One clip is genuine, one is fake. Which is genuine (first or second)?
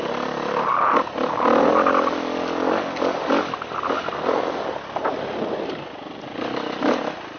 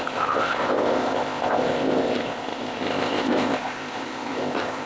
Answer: first